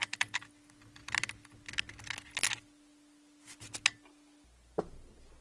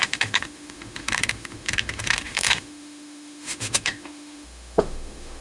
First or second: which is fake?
second